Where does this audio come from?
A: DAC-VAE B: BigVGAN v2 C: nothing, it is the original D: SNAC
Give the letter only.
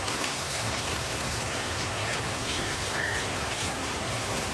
D